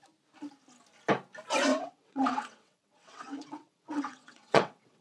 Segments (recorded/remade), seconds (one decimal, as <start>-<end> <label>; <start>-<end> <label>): 0.0-1.7 recorded; 1.7-5.0 remade